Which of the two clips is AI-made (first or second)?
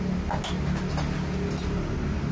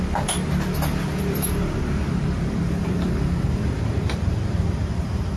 second